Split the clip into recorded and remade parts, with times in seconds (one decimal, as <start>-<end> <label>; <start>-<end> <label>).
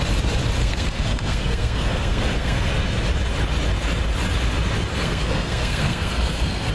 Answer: 0.0-0.6 recorded; 0.6-2.7 remade; 2.7-4.9 recorded; 4.9-6.7 remade